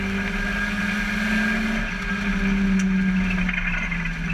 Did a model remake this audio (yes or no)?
no